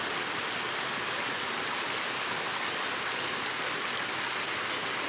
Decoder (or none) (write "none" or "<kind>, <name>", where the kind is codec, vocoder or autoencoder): none